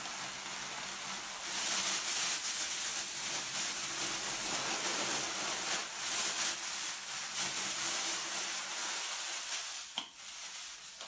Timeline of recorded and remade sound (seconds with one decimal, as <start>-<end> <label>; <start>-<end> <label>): 0.0-11.1 recorded